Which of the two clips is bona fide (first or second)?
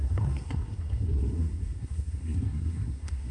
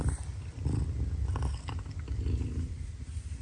second